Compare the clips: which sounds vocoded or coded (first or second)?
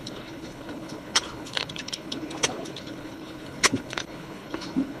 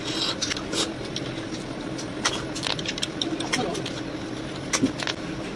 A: first